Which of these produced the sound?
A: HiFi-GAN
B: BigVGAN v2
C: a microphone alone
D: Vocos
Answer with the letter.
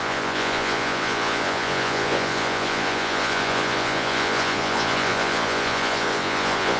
D